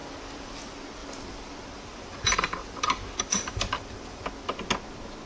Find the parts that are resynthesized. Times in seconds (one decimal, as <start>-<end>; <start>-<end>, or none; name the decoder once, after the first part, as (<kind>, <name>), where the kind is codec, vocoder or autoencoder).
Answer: 0.0-0.5 (vocoder, BigVGAN v2); 1.0-4.2